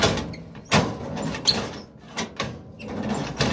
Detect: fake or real real